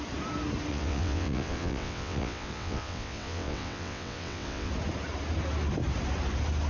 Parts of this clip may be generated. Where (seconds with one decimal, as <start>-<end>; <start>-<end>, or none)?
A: 0.7-4.7